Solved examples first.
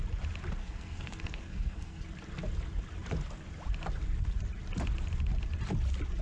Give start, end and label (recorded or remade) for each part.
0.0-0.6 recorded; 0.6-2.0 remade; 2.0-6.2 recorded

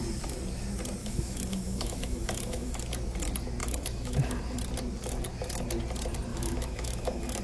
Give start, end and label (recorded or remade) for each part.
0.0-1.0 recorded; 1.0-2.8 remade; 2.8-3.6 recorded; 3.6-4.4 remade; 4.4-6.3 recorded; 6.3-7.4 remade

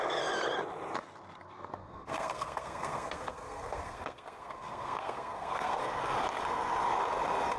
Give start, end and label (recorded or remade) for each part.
0.0-1.8 recorded; 1.8-5.8 remade; 5.8-7.6 recorded

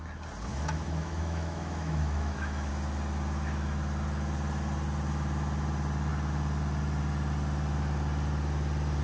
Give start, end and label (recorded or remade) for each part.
0.0-0.5 recorded; 0.5-2.7 remade; 2.7-9.0 recorded